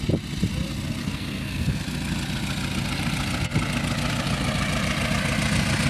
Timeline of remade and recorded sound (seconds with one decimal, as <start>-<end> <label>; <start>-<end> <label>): 0.0-1.0 recorded; 1.0-1.8 remade; 1.8-5.9 recorded

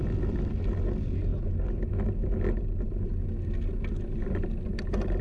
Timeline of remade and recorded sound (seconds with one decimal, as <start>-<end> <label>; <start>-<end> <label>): 0.0-5.2 recorded

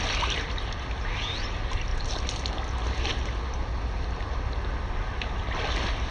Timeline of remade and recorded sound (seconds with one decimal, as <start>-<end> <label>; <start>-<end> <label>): 0.0-6.1 recorded

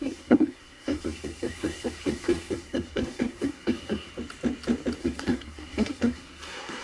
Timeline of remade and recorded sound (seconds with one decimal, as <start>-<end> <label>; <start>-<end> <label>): 0.0-4.1 remade; 4.1-5.0 recorded; 5.0-6.8 remade

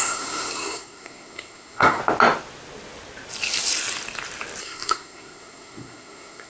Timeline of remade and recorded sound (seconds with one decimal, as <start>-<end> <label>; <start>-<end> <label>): 0.0-2.0 remade; 2.0-4.6 recorded; 4.6-6.5 remade